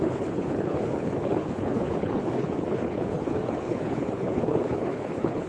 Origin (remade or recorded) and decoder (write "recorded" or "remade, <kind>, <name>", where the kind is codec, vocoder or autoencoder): remade, codec, HILCodec